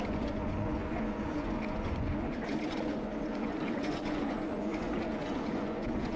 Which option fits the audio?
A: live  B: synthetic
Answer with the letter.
B